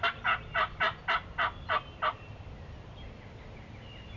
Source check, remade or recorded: recorded